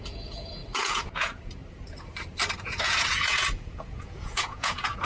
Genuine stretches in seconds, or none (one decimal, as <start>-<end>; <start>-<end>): 1.6-2.6

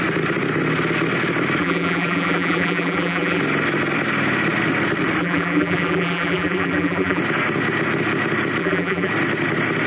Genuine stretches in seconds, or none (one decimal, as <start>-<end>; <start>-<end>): 0.0-1.6; 3.4-5.2; 7.2-8.6; 9.1-9.9

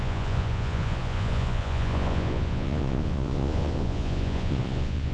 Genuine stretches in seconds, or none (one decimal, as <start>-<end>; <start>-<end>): none

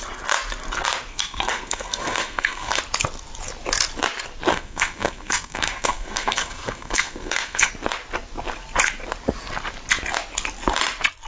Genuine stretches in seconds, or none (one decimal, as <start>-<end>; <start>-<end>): 0.0-1.1; 2.8-4.5; 7.7-11.3

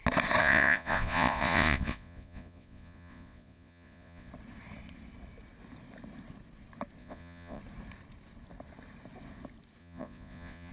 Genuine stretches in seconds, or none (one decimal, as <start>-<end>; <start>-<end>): 0.0-0.4; 4.3-7.0; 7.6-9.8

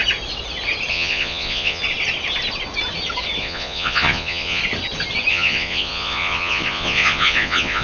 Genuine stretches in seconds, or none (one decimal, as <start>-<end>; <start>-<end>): 0.0-0.9; 1.8-3.4; 4.6-5.3